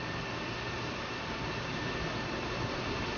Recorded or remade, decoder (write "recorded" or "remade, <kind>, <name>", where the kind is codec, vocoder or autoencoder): recorded